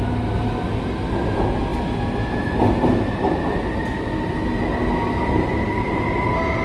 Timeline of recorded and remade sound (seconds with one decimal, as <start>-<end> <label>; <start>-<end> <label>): 0.0-6.6 recorded